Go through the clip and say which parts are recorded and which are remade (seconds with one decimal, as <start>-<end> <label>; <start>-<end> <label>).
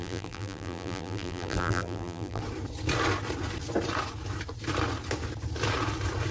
0.0-2.4 remade; 2.4-6.3 recorded